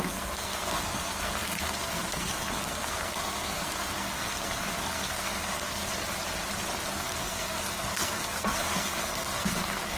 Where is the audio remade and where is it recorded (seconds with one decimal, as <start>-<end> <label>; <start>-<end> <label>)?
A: 0.0-5.8 remade; 5.8-6.9 recorded; 6.9-10.0 remade